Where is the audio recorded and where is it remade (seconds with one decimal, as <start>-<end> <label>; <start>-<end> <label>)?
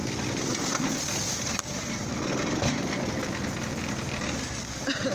0.0-5.1 recorded